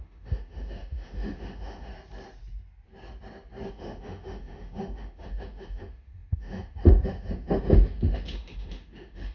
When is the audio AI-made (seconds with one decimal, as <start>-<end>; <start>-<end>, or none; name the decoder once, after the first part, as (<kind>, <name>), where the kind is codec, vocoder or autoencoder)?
0.0-1.9 (autoencoder, DAC-VAE); 3.7-9.3